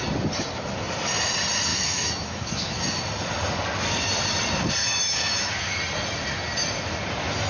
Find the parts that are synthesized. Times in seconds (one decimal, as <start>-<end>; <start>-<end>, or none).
1.7-2.8; 4.8-5.8